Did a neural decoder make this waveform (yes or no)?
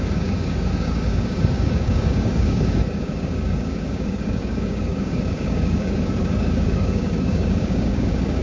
yes